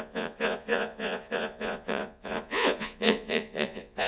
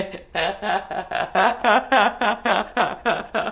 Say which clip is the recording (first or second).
second